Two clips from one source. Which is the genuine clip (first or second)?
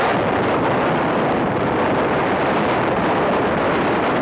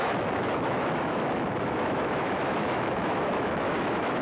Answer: first